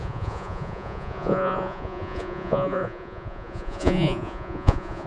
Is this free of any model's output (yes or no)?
no